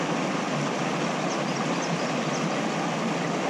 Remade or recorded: recorded